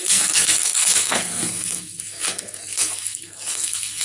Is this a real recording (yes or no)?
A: no